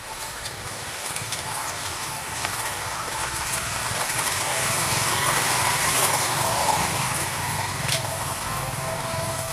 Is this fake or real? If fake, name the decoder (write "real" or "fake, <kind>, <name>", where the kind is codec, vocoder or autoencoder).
fake, codec, DAC